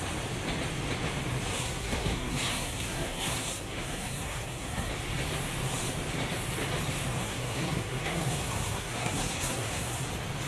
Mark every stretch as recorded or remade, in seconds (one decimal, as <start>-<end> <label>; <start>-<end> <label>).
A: 0.0-1.5 recorded; 1.5-4.9 remade; 4.9-7.2 recorded; 7.2-10.1 remade; 10.1-10.5 recorded